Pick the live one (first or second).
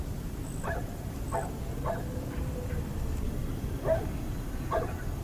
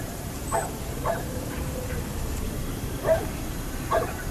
first